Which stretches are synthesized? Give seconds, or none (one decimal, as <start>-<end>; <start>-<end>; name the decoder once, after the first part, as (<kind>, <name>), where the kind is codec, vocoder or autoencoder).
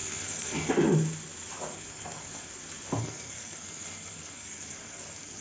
0.0-0.7 (codec, SNAC); 1.7-2.5; 3.0-5.4